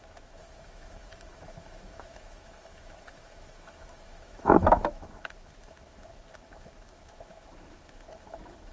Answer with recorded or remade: remade